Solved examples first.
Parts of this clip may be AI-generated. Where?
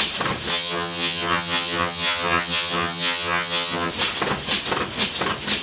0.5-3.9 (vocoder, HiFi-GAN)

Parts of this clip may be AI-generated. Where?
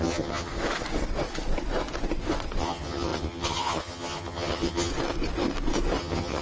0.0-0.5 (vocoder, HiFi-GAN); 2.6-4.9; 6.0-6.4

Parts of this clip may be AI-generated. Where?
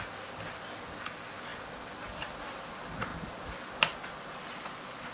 none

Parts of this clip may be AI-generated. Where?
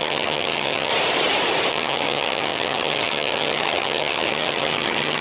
0.0-0.9 (vocoder, HiFi-GAN); 1.7-5.2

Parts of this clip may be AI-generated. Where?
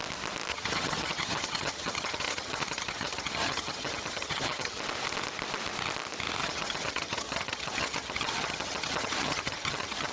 0.5-4.8 (vocoder, HiFi-GAN); 6.4-10.1